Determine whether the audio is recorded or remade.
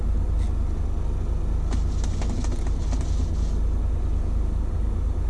recorded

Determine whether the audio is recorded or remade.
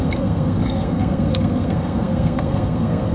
remade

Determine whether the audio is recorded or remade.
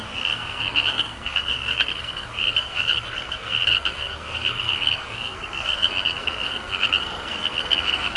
remade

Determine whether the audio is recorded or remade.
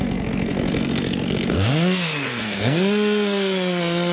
remade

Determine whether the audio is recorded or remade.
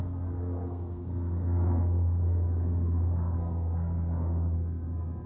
remade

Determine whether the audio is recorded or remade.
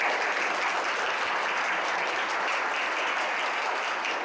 recorded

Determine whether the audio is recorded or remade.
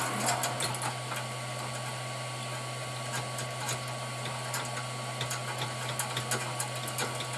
recorded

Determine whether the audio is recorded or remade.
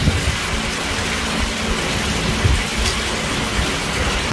recorded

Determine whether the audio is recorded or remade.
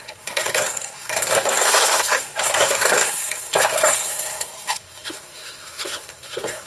remade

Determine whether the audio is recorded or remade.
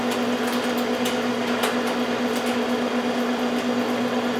recorded